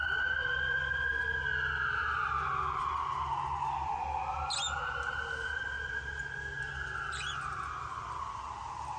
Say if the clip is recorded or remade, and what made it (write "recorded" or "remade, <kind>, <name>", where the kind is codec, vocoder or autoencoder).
recorded